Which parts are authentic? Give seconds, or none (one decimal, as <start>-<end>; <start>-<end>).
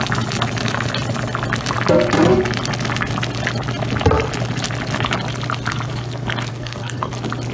0.0-6.5; 7.1-7.5